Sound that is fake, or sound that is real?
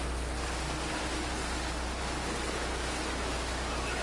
real